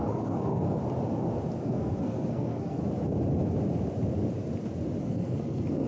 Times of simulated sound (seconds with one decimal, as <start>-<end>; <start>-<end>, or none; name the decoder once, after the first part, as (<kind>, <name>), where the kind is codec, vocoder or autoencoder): 0.0-0.8 (codec, SNAC); 1.6-2.8; 5.0-5.9